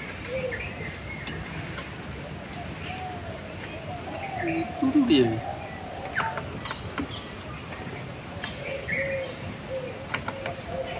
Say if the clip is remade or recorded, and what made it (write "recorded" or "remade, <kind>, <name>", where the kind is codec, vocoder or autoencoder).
recorded